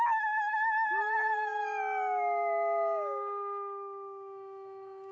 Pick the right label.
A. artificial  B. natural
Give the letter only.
A